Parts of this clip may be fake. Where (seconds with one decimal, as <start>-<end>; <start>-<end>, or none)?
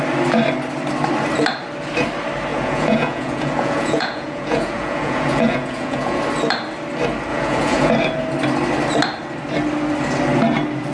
2.5-6.2; 7.3-7.9